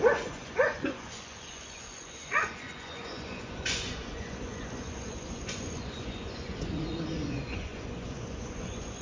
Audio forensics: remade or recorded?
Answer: remade